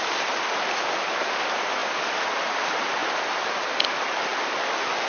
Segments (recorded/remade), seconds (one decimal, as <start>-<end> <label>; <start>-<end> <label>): 0.0-5.1 recorded